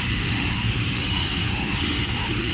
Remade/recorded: remade